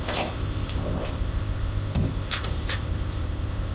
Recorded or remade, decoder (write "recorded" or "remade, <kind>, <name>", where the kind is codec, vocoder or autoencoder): remade, codec, ZipCodec